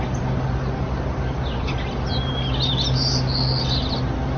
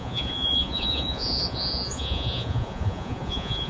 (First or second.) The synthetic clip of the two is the second